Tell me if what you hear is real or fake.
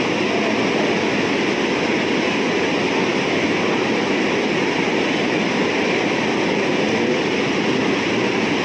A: real